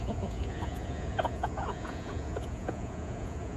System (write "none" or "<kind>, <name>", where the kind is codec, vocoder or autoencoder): vocoder, Vocos